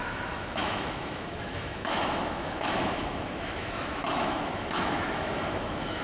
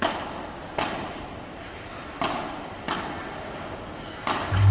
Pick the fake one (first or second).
first